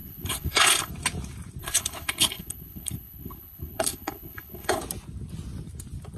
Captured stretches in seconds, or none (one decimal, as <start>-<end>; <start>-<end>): 0.9-1.6; 4.8-6.2

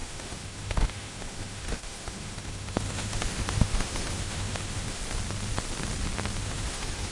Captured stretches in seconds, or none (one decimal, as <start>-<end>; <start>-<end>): 5.0-6.4